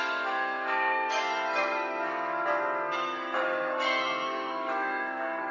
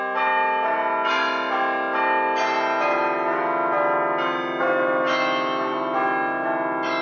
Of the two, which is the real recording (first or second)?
second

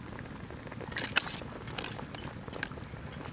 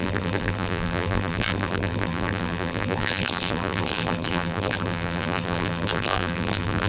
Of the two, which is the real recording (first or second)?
first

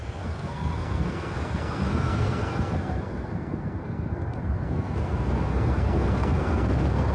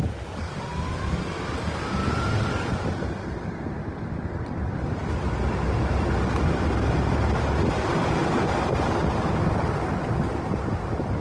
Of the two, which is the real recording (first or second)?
second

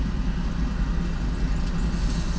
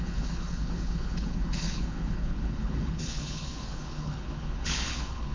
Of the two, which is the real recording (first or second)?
first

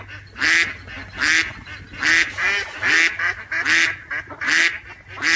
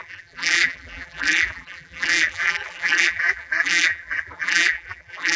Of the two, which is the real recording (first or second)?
first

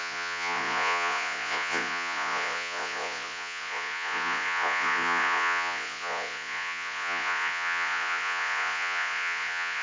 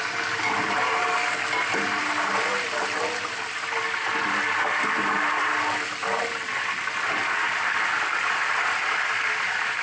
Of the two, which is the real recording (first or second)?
second